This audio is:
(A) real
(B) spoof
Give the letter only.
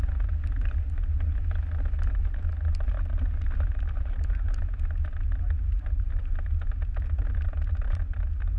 A